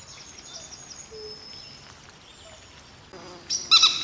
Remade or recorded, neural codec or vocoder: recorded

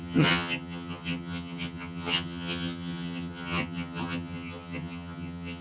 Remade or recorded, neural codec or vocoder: remade, vocoder, HiFi-GAN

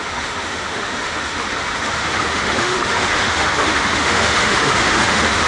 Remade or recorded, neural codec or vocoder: remade, autoencoder, DAC-VAE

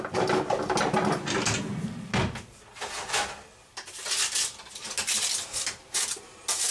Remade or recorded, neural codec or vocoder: recorded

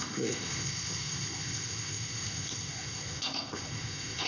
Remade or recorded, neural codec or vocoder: remade, codec, ZipCodec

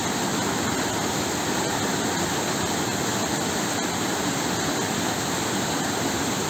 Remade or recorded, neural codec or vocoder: recorded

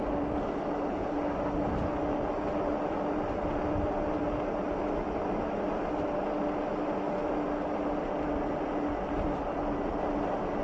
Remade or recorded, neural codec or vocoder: recorded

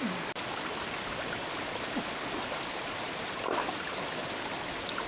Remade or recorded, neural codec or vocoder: recorded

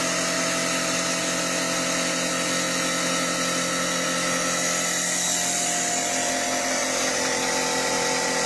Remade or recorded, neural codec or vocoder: recorded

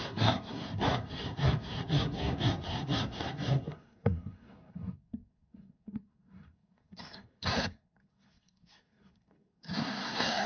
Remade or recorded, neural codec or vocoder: remade, codec, SNAC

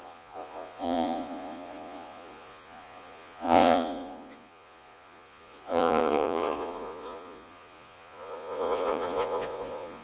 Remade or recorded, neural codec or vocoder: remade, vocoder, Vocos